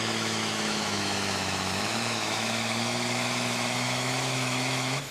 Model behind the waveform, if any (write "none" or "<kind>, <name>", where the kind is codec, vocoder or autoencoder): autoencoder, DAC-VAE